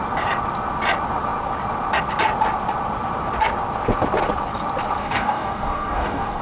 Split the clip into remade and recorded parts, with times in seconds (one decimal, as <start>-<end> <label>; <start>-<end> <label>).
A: 0.0-5.0 recorded; 5.0-6.4 remade